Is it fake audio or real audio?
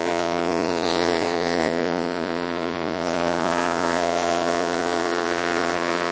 fake